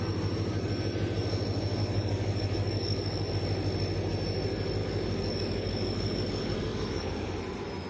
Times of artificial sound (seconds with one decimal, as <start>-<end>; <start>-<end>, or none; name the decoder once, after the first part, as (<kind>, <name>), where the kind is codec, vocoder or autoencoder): 1.8-3.3 (codec, DAC); 4.8-7.3